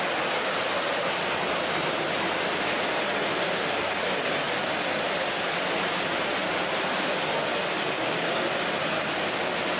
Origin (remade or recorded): recorded